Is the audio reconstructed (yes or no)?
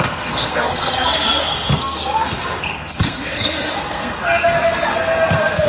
yes